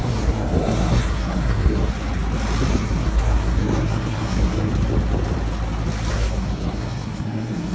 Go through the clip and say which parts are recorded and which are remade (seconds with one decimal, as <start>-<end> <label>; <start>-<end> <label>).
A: 0.0-1.9 remade; 1.9-2.7 recorded; 2.7-4.7 remade; 4.7-6.1 recorded; 6.1-7.7 remade